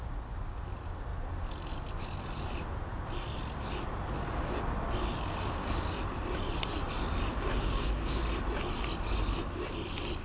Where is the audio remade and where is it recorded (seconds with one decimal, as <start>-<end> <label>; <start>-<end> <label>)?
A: 0.0-5.0 recorded; 5.0-5.9 remade; 5.9-7.3 recorded; 7.3-8.2 remade; 8.2-10.2 recorded